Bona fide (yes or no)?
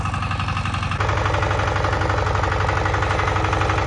yes